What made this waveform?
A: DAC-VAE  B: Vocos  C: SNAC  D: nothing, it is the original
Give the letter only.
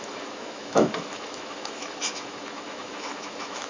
A